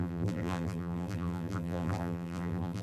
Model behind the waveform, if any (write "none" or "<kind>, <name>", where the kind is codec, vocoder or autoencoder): vocoder, BigVGAN v2